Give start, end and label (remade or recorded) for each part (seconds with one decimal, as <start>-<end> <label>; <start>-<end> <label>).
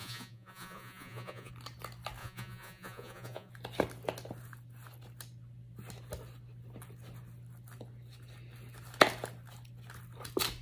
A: 0.0-1.5 remade; 1.5-2.2 recorded; 2.2-3.5 remade; 3.5-10.6 recorded